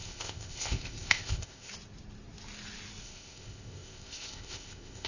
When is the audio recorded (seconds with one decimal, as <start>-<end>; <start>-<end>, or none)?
1.7-3.0